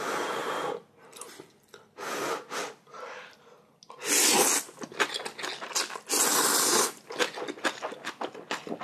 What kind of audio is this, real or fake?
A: real